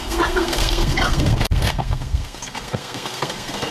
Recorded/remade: remade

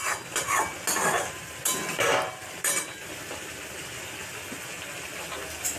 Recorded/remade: recorded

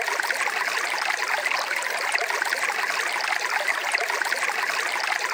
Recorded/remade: recorded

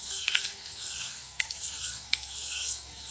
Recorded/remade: remade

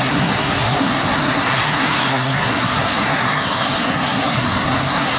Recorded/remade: remade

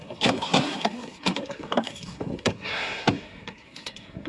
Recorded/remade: remade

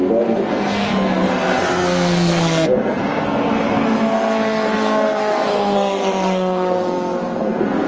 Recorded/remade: remade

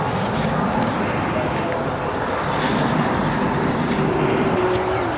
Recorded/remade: recorded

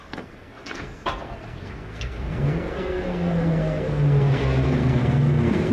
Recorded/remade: remade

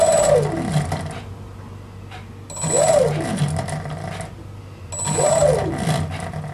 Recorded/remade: recorded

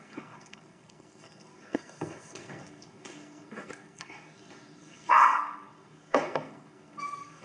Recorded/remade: remade